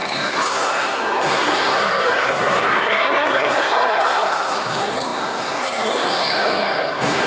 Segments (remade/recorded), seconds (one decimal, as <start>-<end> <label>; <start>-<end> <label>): 0.0-7.3 remade